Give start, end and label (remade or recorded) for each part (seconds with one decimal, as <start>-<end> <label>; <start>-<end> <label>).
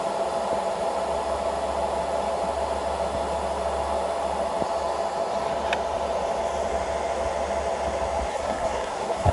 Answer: 0.0-8.3 recorded; 8.3-9.3 remade